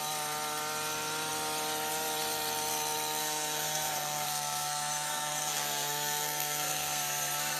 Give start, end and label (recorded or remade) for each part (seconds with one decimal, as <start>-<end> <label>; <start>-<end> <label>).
0.0-3.2 recorded; 3.2-7.6 remade